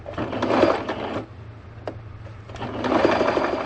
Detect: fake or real real